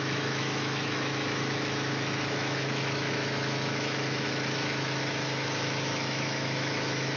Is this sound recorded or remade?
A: remade